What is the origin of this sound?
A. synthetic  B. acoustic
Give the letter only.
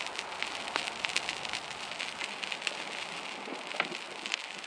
B